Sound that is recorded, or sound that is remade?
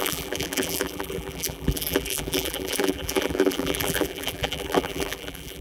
remade